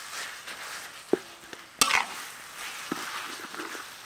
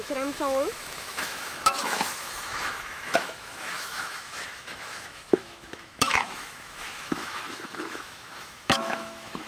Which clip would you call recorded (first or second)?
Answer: first